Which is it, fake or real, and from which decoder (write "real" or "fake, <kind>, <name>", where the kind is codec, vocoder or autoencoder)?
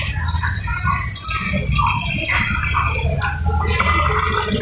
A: real